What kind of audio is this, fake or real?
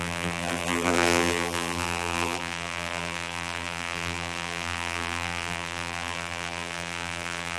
fake